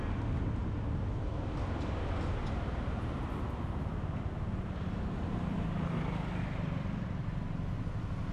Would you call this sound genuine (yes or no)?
yes